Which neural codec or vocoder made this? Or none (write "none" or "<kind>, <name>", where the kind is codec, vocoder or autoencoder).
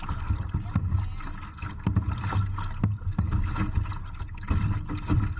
none